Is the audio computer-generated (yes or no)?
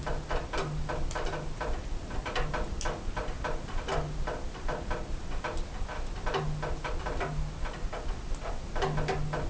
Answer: no